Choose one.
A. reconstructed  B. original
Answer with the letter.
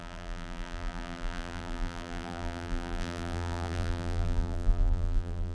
A